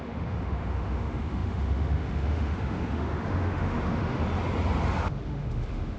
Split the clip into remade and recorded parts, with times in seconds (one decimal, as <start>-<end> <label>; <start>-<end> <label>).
0.0-4.2 remade; 4.2-5.0 recorded; 5.0-6.0 remade